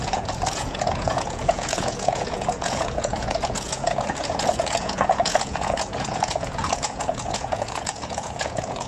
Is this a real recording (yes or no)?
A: no